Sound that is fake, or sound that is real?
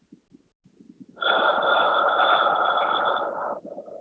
real